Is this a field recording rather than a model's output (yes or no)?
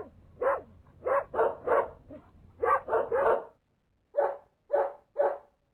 yes